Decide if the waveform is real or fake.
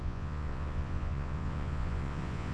fake